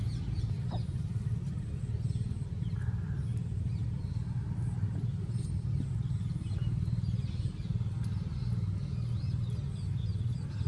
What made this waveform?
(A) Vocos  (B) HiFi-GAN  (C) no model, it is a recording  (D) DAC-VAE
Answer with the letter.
C